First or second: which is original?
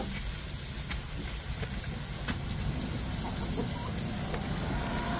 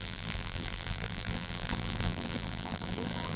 first